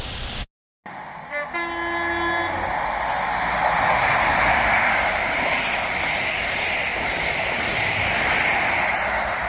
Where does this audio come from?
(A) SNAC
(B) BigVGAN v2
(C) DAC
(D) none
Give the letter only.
D